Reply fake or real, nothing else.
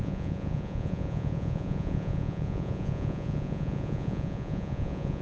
fake